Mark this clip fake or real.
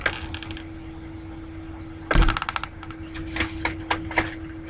real